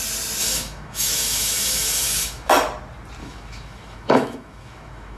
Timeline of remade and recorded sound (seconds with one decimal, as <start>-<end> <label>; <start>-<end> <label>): 0.0-0.4 recorded; 0.4-2.5 remade; 2.5-3.2 recorded; 3.2-5.2 remade